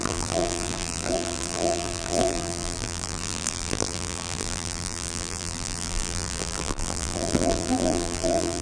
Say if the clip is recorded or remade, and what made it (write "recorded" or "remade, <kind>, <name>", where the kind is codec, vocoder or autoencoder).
remade, vocoder, BigVGAN v2